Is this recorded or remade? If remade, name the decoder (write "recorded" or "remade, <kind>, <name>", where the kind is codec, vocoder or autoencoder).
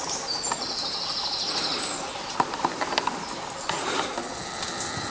recorded